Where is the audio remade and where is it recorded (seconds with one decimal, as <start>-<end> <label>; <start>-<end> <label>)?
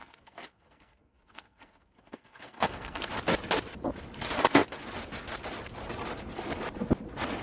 0.0-3.1 remade; 3.1-7.4 recorded